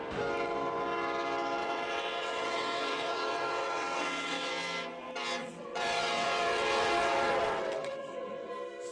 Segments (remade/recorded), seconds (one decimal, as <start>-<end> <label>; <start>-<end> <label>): 0.0-1.6 recorded; 1.6-4.5 remade; 4.5-5.4 recorded; 5.4-8.5 remade; 8.5-8.9 recorded